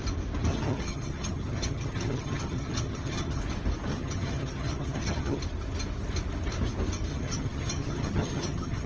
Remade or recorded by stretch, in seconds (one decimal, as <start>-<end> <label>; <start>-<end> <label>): 0.0-0.5 recorded; 0.5-3.4 remade; 3.4-3.9 recorded; 3.9-5.4 remade; 5.4-7.1 recorded; 7.1-8.9 remade